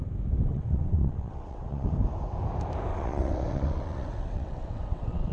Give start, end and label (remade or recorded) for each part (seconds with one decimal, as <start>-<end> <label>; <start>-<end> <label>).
0.0-0.5 recorded; 0.5-1.9 remade; 1.9-2.9 recorded; 2.9-5.3 remade